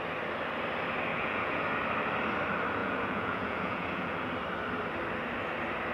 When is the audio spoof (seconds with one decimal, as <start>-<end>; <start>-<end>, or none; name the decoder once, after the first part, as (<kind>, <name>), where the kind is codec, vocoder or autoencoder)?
1.1-1.6 (vocoder, Vocos); 2.8-4.3